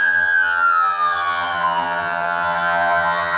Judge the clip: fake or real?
fake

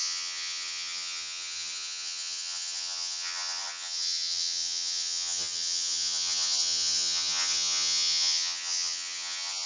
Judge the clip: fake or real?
fake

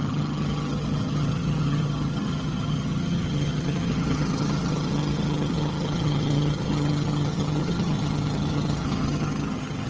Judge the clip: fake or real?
fake